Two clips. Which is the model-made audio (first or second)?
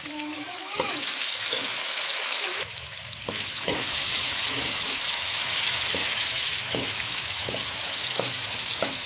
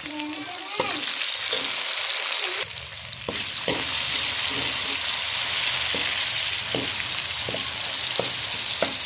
first